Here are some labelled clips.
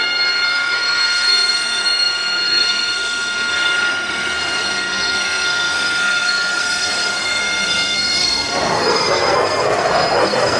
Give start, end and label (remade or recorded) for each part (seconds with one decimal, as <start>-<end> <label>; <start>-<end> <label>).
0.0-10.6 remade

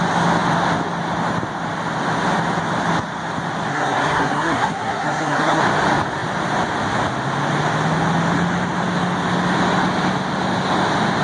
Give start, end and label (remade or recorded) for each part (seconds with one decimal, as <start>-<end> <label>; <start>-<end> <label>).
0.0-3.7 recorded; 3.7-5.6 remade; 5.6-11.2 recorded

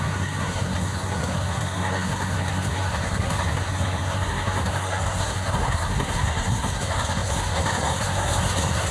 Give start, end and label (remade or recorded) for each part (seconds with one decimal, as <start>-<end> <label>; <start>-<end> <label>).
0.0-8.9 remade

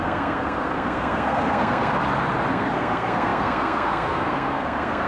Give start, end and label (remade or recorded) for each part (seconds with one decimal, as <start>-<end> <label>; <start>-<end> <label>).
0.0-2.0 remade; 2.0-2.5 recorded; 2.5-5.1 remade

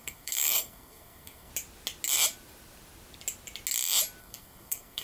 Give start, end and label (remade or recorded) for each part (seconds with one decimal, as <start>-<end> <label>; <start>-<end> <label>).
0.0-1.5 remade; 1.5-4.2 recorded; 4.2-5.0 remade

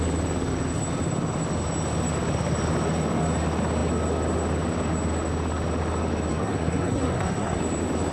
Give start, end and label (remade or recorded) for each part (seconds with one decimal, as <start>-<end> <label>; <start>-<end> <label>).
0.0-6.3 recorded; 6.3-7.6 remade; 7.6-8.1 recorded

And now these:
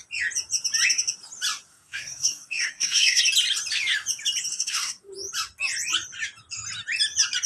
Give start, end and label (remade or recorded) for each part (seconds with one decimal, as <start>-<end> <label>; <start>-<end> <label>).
0.0-1.7 recorded; 1.7-3.2 remade; 3.2-4.5 recorded; 4.5-5.1 remade; 5.1-7.5 recorded